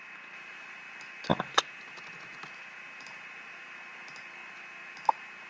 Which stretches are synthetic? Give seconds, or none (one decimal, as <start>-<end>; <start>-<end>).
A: none

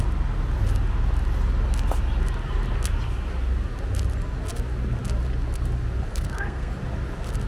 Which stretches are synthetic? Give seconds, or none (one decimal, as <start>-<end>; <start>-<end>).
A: 6.1-6.7

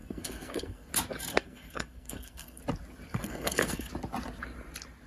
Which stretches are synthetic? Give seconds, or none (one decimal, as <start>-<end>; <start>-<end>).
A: 0.0-0.9; 1.3-2.6; 3.1-3.9

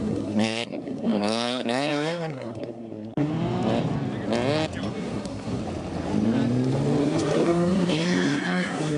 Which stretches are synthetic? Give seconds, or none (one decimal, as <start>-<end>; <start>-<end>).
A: 0.0-3.3; 4.9-5.6; 7.0-9.0

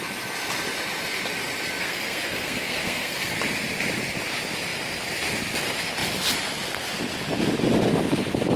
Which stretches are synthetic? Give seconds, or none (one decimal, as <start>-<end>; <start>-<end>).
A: 1.8-3.3

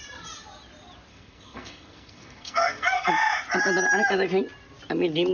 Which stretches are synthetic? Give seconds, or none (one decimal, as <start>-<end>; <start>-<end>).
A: 1.1-3.1